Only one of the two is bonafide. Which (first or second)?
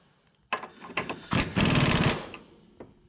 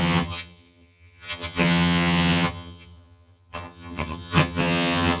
first